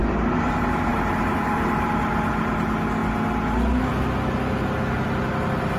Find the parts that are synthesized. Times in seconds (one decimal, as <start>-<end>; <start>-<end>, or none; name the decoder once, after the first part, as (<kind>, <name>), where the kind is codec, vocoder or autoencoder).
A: 0.0-0.5 (vocoder, BigVGAN v2); 0.9-1.9